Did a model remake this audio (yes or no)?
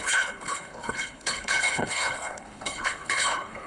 yes